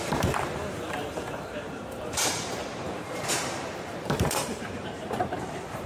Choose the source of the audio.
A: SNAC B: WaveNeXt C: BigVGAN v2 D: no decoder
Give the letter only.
C